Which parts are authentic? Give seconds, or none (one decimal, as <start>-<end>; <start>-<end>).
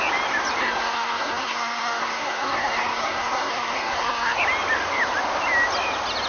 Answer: 0.0-0.6; 4.4-6.3